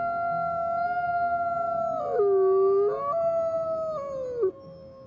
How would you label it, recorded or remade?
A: recorded